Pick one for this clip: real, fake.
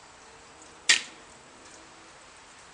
real